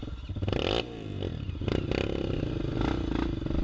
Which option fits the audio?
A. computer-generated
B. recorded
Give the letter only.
B